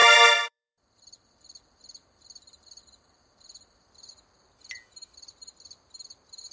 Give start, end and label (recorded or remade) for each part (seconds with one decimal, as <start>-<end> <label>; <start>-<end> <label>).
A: 0.0-3.9 remade; 3.9-6.5 recorded